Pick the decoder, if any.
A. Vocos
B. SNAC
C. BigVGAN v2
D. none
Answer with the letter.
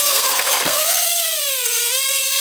B